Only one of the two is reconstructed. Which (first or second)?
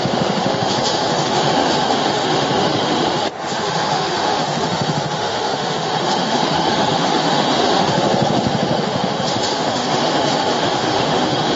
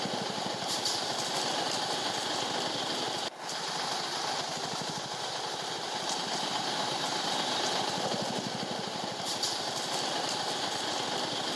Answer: first